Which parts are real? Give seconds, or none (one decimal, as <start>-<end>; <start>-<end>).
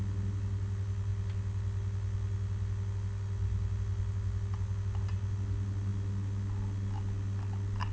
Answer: 0.0-7.9